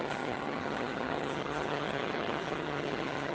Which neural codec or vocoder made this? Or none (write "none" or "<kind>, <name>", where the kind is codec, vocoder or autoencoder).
vocoder, HiFi-GAN